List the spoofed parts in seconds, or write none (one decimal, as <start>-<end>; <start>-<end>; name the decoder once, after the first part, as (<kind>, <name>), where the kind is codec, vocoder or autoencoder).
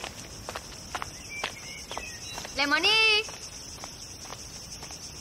none